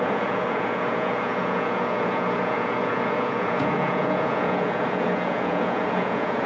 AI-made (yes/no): yes